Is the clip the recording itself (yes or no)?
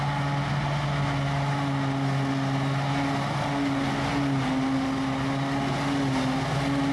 yes